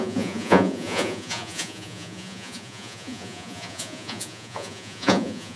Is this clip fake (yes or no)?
yes